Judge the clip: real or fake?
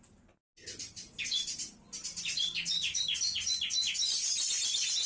real